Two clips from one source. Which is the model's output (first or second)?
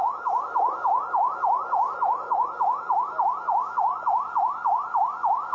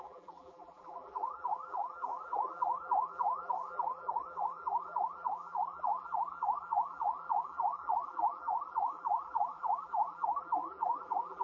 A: second